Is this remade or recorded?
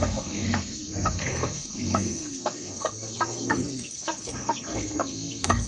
remade